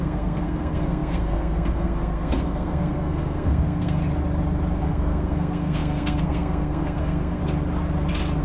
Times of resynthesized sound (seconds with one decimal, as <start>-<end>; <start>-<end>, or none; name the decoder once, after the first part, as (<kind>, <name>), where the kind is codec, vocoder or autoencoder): 0.0-4.0 (codec, SNAC); 4.8-7.4